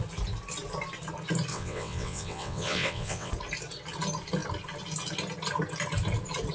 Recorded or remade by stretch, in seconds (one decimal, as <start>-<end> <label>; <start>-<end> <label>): 0.0-1.5 recorded; 1.5-3.3 remade; 3.3-6.5 recorded